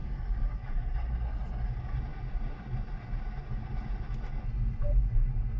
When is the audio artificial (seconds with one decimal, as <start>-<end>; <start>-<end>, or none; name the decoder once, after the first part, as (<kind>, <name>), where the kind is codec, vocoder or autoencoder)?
0.0-0.7 (codec, DAC)